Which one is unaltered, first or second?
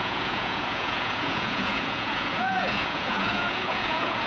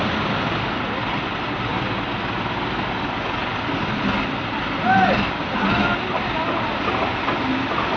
second